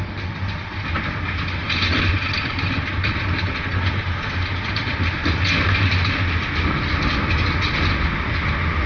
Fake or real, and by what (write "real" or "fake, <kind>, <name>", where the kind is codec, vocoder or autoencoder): real